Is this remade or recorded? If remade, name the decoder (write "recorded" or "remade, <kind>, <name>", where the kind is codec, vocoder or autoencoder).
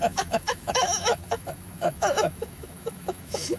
remade, autoencoder, DAC-VAE